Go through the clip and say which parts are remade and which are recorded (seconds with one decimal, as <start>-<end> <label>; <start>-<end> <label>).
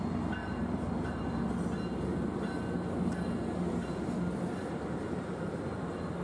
0.0-0.4 recorded; 0.4-1.2 remade; 1.2-4.6 recorded; 4.6-5.6 remade; 5.6-6.2 recorded